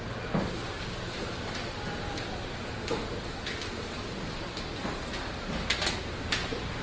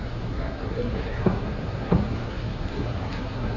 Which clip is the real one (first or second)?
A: first